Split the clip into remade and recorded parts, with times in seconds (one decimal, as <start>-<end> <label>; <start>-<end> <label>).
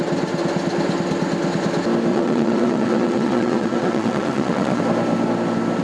0.0-2.1 recorded; 2.1-4.8 remade; 4.8-5.8 recorded